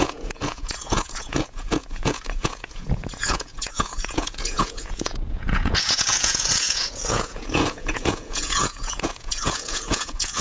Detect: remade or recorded remade